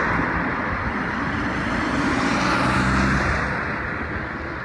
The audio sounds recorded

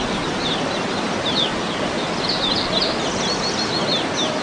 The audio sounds recorded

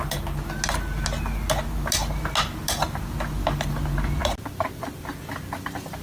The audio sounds recorded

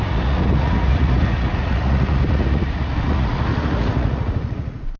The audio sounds remade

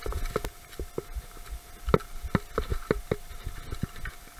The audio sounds recorded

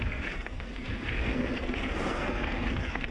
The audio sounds remade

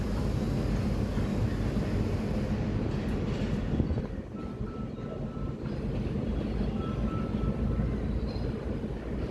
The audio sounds recorded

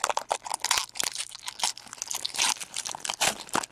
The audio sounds recorded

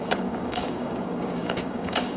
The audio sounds remade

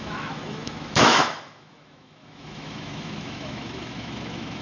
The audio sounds remade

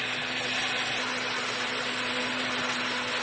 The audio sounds recorded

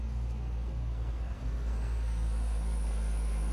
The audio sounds remade